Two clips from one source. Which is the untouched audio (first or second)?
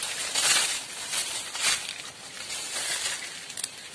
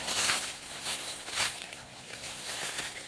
first